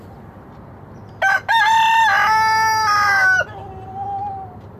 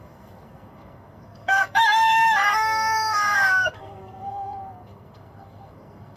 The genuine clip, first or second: first